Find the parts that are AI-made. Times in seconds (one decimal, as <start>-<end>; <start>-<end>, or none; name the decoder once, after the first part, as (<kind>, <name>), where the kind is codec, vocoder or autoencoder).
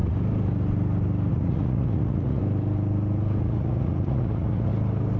1.3-2.4 (vocoder, Vocos); 3.4-4.7